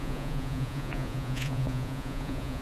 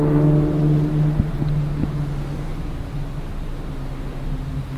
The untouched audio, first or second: second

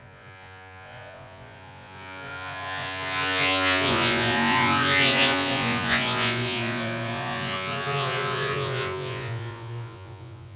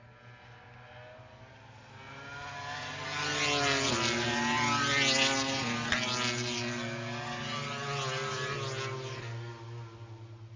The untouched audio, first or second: second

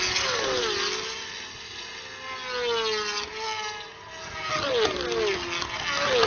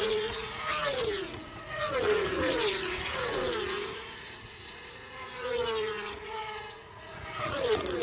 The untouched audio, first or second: first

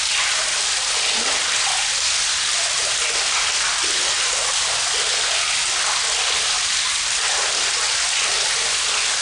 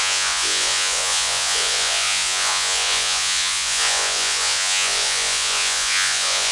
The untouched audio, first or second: first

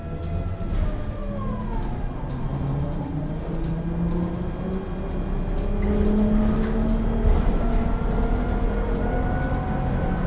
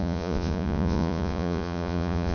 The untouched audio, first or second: first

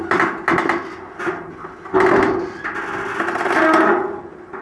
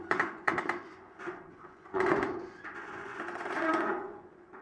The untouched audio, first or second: first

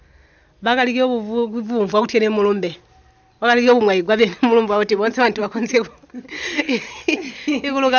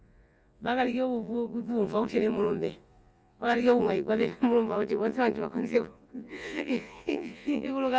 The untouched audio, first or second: first